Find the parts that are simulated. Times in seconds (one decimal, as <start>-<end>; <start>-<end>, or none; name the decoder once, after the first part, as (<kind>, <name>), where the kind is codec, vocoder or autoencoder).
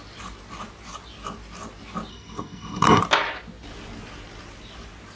2.1-3.0 (codec, SNAC)